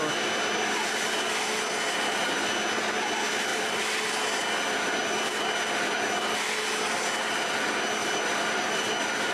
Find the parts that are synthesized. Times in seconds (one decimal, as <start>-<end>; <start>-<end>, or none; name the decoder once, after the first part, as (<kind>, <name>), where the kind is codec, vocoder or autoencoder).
3.5-4.1 (vocoder, BigVGAN v2); 8.0-8.9